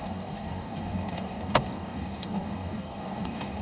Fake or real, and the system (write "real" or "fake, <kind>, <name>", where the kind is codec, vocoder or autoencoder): fake, codec, DAC